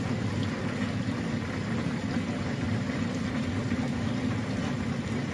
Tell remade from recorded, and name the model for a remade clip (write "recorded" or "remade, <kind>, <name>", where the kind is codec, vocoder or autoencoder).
recorded